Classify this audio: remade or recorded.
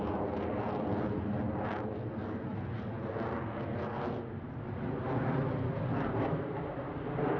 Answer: recorded